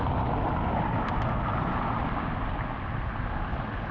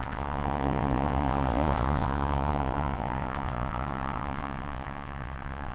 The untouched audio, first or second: first